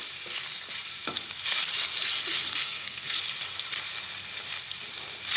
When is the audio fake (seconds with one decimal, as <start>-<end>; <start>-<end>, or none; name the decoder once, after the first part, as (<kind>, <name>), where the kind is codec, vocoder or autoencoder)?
2.6-3.2 (codec, SNAC)